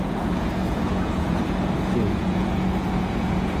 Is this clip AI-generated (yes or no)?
yes